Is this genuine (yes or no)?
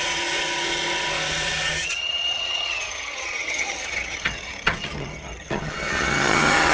no